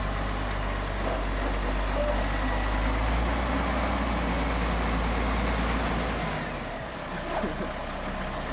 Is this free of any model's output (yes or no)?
yes